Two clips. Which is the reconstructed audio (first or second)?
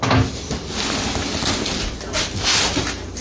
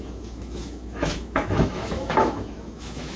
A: second